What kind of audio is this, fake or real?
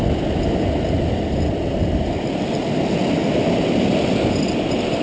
real